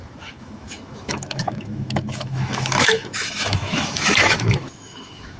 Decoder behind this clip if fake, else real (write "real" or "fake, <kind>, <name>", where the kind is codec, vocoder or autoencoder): fake, autoencoder, DAC-VAE